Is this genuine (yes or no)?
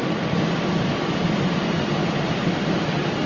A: yes